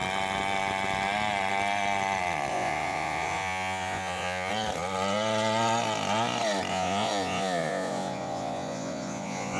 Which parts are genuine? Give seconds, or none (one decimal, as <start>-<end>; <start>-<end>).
0.0-2.5; 4.5-6.7